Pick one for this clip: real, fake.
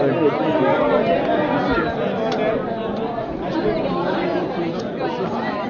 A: real